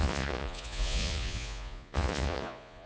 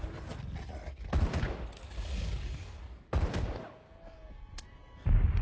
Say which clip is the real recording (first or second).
second